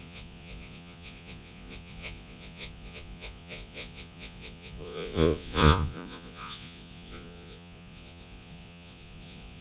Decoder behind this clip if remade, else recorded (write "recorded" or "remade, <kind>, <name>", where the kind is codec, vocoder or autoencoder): remade, vocoder, Vocos